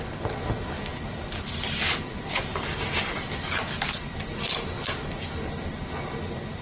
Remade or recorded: remade